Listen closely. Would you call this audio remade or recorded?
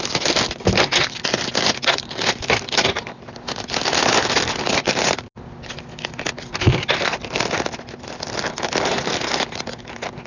recorded